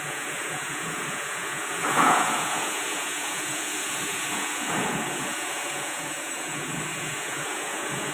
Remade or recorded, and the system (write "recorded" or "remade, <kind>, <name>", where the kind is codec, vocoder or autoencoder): remade, vocoder, Vocos